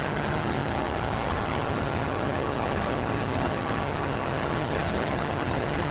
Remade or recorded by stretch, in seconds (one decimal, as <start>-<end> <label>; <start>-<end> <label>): 0.0-5.9 remade

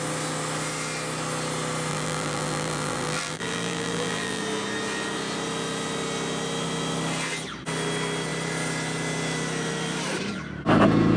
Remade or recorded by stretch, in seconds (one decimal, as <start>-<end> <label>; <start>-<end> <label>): 0.0-1.9 recorded; 1.9-4.4 remade; 4.4-11.2 recorded

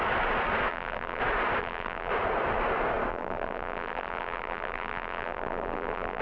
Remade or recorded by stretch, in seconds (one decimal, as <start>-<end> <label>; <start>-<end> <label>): 0.0-0.7 recorded; 0.7-1.2 remade; 1.2-1.6 recorded; 1.6-2.1 remade; 2.1-3.1 recorded; 3.1-6.2 remade

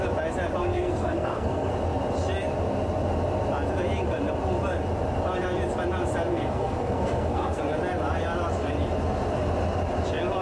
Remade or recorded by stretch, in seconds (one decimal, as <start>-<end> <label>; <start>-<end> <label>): 0.0-0.6 recorded; 0.6-1.7 remade; 1.7-6.3 recorded; 6.3-7.6 remade; 7.6-10.4 recorded

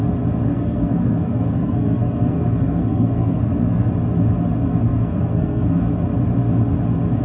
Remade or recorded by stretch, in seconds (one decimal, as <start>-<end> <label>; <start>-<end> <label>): 0.0-0.5 recorded; 0.5-3.9 remade; 3.9-4.7 recorded; 4.7-5.9 remade; 5.9-7.2 recorded

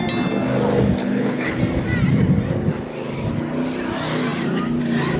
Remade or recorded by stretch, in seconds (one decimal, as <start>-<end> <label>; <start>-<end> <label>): 0.0-1.0 recorded; 1.0-1.6 remade; 1.6-5.2 recorded

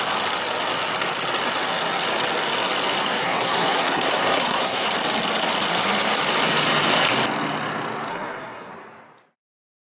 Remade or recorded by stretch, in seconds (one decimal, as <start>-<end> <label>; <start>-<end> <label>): 0.0-3.0 recorded; 3.0-4.9 remade; 4.9-8.1 recorded; 8.1-8.7 remade; 8.7-9.8 recorded

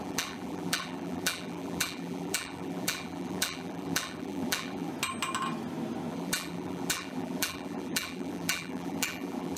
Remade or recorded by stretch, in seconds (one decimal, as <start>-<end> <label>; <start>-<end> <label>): 0.0-4.9 remade; 4.9-6.1 recorded; 6.1-9.6 remade